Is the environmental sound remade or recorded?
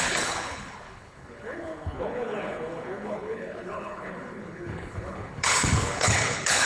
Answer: remade